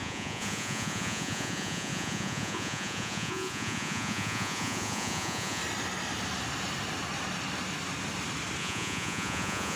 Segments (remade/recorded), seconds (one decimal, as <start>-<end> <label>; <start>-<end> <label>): 0.0-5.6 remade; 5.6-8.6 recorded; 8.6-9.8 remade